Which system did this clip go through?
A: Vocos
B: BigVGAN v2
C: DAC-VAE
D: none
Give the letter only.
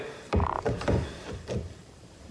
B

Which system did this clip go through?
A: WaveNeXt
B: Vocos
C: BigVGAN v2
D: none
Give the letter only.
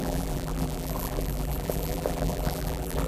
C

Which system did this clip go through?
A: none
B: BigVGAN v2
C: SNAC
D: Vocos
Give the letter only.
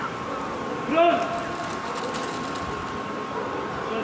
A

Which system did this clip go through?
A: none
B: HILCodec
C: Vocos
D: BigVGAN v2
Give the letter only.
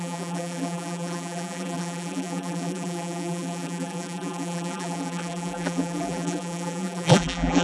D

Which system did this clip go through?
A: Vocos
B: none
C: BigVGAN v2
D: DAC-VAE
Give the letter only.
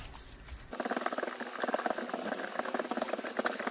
B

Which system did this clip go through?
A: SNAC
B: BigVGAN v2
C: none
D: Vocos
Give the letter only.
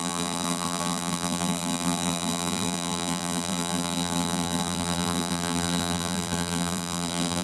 B